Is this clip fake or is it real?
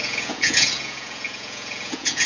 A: fake